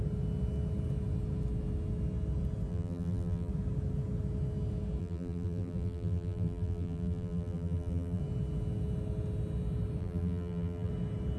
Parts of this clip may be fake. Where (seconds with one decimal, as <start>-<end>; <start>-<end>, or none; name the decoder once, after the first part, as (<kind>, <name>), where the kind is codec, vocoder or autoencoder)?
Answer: 2.7-3.5 (vocoder, BigVGAN v2); 5.0-8.2; 10.0-10.9